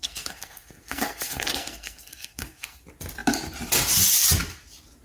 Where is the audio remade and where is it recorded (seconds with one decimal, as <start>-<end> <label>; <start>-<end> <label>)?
0.0-2.8 remade; 2.8-5.0 recorded